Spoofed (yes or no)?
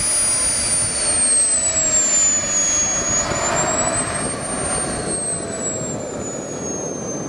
no